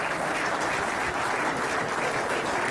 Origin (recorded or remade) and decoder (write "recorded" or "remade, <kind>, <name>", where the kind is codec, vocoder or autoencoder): remade, vocoder, BigVGAN v2